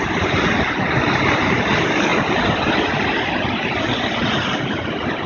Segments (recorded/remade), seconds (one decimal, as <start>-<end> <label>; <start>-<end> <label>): 0.0-2.1 remade; 2.1-4.6 recorded; 4.6-5.3 remade